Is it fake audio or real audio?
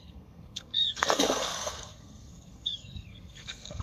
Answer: fake